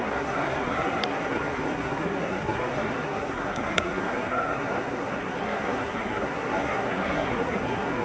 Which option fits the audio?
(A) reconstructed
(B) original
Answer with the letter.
A